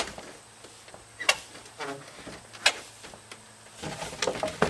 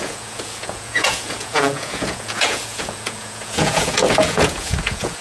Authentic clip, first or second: first